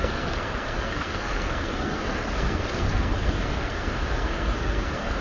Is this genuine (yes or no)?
no